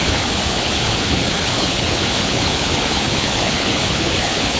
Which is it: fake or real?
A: fake